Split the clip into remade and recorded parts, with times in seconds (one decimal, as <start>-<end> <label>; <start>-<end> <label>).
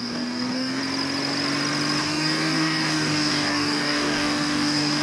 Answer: 0.0-0.8 remade; 0.8-2.0 recorded; 2.0-5.0 remade